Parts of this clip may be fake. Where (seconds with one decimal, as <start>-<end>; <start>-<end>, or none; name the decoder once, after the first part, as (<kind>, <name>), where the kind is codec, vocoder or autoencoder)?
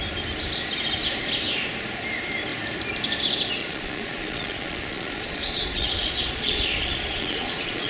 3.6-7.9 (vocoder, Vocos)